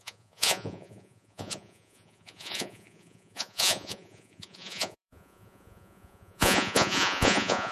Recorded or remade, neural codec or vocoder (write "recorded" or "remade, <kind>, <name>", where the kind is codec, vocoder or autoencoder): remade, vocoder, Vocos